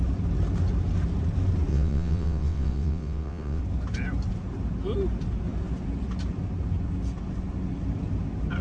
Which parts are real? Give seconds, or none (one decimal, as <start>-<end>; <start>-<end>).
0.0-1.7; 3.6-8.6